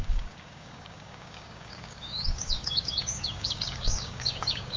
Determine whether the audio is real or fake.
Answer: fake